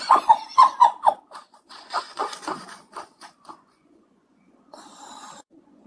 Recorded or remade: remade